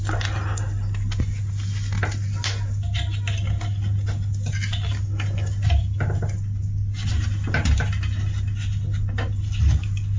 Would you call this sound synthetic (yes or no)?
no